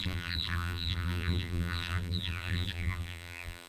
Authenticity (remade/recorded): remade